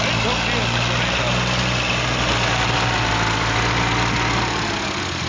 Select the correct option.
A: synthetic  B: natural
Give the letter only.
B